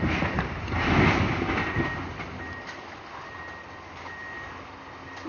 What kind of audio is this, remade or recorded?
recorded